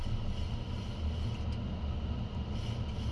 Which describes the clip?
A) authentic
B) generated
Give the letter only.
A